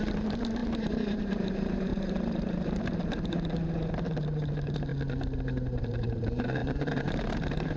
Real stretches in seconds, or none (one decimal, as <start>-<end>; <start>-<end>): 4.9-5.8